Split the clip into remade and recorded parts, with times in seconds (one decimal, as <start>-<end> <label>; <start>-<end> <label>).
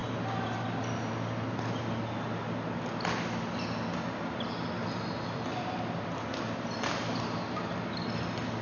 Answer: 0.0-8.6 remade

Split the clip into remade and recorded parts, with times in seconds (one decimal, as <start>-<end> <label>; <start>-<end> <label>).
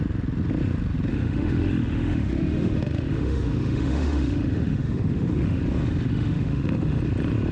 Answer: 0.0-1.1 recorded; 1.1-5.6 remade; 5.6-6.1 recorded; 6.1-7.0 remade; 7.0-7.5 recorded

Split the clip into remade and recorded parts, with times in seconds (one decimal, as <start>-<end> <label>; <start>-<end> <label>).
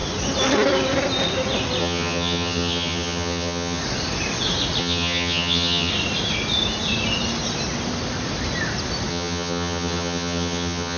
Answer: 0.0-1.8 recorded; 1.8-3.8 remade; 3.8-4.8 recorded; 4.8-5.9 remade; 5.9-9.1 recorded; 9.1-11.0 remade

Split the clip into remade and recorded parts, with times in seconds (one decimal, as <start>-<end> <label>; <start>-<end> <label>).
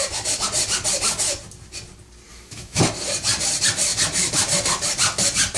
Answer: 0.0-2.3 recorded; 2.3-2.8 remade; 2.8-5.6 recorded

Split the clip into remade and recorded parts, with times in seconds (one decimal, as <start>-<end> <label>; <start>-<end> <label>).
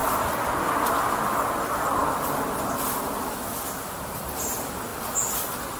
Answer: 0.0-5.8 recorded